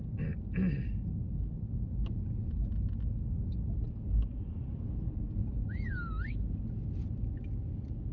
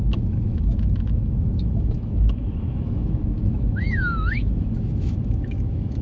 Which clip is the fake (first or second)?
second